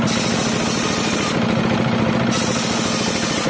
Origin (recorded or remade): recorded